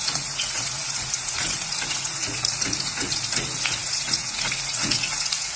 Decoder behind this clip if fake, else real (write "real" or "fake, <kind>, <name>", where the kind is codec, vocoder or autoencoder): fake, vocoder, Vocos